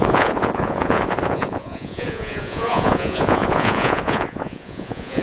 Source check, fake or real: fake